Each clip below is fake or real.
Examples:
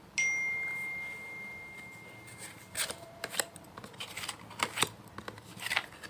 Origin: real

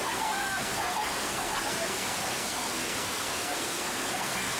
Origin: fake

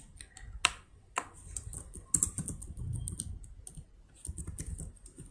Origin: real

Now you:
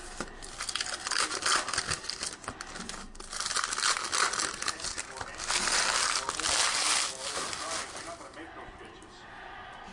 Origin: real